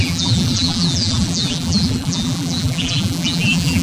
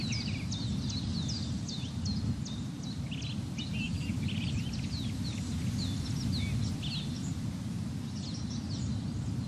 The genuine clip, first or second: second